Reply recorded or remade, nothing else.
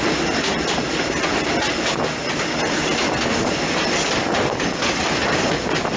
recorded